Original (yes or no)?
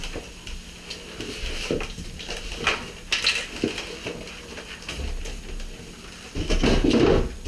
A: yes